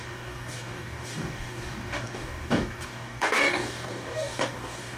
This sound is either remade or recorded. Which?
remade